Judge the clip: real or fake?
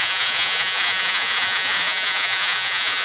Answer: fake